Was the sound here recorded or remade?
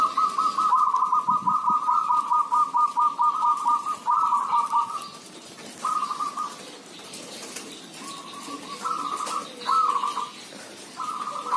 recorded